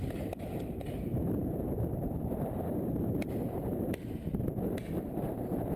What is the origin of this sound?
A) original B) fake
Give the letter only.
B